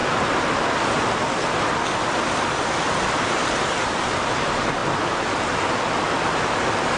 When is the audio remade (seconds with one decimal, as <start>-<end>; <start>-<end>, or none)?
none